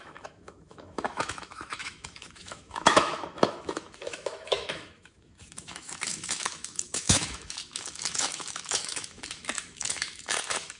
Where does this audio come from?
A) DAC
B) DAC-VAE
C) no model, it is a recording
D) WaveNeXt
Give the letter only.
B